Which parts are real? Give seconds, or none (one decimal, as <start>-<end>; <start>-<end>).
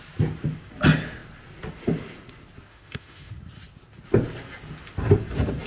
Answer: 0.0-2.7; 3.3-5.7